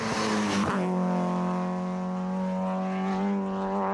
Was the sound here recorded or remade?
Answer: recorded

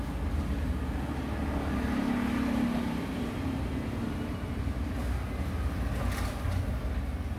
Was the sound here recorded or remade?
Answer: recorded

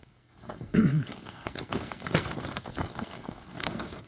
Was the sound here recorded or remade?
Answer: remade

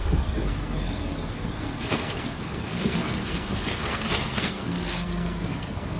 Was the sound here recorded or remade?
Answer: remade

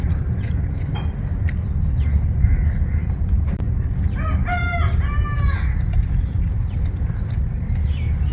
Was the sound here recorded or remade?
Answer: recorded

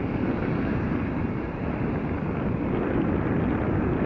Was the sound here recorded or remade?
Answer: recorded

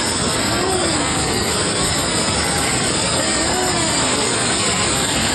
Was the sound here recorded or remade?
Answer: remade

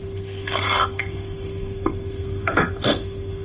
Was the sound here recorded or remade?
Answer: remade